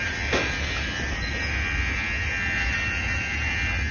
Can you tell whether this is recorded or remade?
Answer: recorded